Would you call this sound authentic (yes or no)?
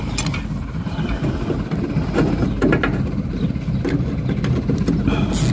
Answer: yes